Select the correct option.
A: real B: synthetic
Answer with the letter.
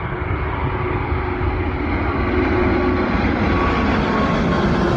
A